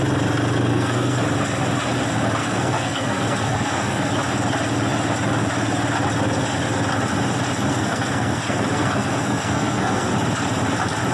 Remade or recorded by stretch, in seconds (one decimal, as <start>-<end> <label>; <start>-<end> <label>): 0.0-0.7 recorded; 0.7-1.2 remade; 1.2-2.4 recorded; 2.4-4.1 remade; 4.1-7.7 recorded; 7.7-10.1 remade; 10.1-11.1 recorded